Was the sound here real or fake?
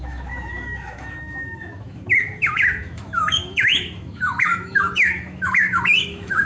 fake